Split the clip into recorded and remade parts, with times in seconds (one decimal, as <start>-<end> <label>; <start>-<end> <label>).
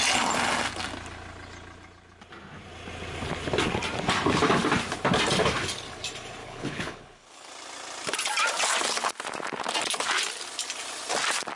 0.0-6.4 recorded; 6.4-7.5 remade; 7.5-11.6 recorded